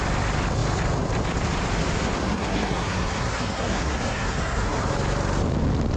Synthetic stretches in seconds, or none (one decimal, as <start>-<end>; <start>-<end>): 2.2-4.8